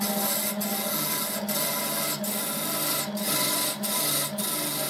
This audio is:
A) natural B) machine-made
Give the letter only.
A